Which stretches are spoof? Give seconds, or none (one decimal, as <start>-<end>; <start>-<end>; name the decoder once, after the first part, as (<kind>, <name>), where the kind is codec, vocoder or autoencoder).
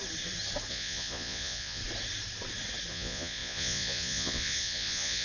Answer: 0.7-1.8 (vocoder, Vocos); 2.9-5.2